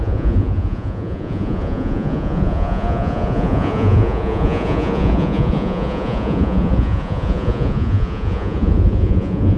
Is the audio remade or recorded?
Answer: remade